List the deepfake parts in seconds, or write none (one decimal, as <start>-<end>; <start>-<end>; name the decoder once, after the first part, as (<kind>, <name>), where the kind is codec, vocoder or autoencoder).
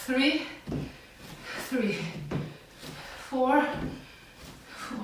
none